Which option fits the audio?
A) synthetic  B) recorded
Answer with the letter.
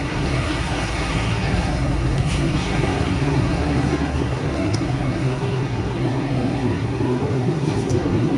A